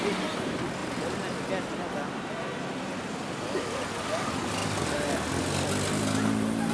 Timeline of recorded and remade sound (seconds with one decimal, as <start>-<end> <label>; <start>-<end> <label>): 0.0-6.7 recorded